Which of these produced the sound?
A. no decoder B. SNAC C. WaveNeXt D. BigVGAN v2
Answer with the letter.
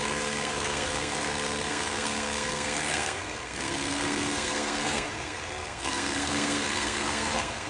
B